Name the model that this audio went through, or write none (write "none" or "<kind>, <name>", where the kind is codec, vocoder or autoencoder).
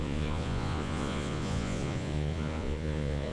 vocoder, Vocos